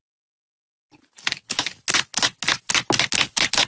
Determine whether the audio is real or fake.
real